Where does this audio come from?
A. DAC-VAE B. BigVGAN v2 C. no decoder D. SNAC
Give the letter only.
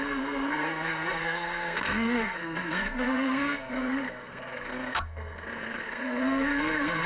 D